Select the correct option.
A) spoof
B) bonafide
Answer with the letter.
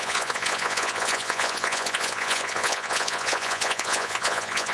A